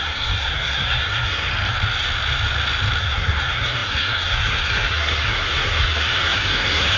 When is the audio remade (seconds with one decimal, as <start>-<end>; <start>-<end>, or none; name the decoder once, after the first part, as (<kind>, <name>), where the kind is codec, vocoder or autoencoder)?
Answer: 0.0-1.5 (codec, SNAC); 3.0-7.0